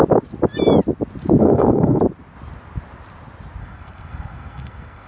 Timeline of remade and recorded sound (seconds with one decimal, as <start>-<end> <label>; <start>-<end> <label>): 0.0-1.4 recorded; 1.4-2.0 remade; 2.0-3.6 recorded; 3.6-5.1 remade